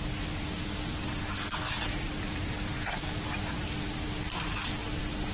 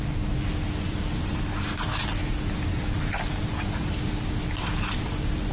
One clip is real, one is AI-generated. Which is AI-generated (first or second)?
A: first